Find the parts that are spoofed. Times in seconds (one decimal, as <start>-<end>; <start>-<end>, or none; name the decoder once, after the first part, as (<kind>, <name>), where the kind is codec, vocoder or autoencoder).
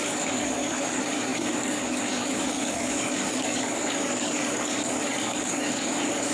0.0-6.3 (codec, DAC)